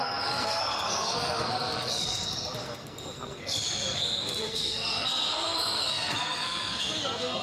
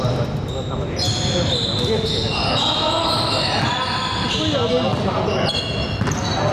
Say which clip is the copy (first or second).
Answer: first